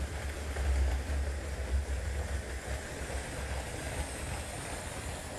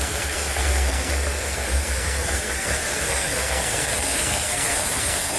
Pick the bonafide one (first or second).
first